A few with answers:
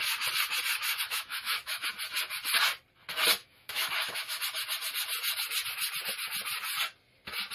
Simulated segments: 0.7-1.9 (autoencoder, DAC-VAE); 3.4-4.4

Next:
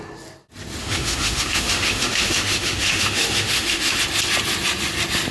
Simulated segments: 0.8-4.0 (autoencoder, DAC-VAE)

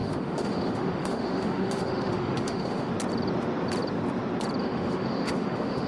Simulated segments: 0.0-2.9 (autoencoder, DAC-VAE); 4.6-5.9

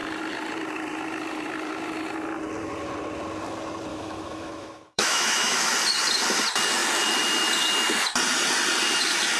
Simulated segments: 3.9-5.7 (autoencoder, DAC-VAE)